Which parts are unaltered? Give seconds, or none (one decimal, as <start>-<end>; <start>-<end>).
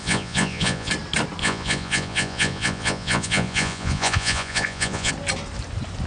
0.9-1.4; 5.1-6.1